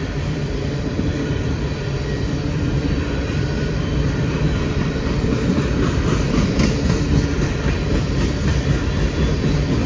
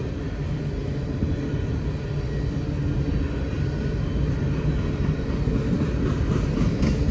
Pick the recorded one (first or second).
second